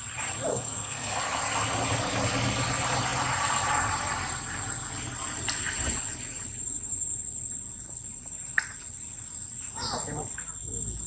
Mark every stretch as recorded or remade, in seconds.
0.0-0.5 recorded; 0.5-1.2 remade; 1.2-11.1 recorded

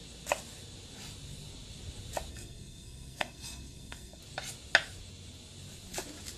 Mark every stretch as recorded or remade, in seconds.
0.0-2.3 recorded; 2.3-4.2 remade; 4.2-6.4 recorded